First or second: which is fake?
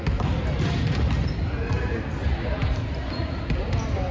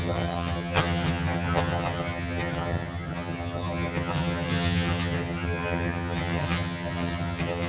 second